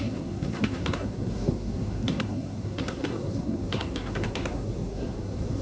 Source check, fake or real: fake